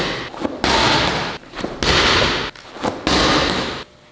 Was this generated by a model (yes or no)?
no